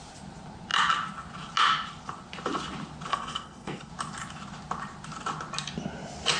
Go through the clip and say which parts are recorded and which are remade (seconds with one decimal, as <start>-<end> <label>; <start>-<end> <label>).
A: 0.0-3.1 recorded; 3.1-3.9 remade; 3.9-6.4 recorded